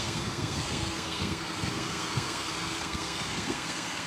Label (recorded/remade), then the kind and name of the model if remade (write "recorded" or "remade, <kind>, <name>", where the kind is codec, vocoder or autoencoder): remade, codec, SNAC